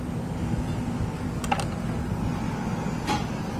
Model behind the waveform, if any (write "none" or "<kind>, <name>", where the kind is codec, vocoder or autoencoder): none